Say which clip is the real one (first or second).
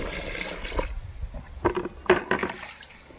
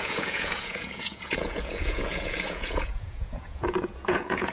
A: first